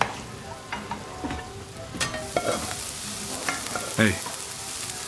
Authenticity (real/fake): real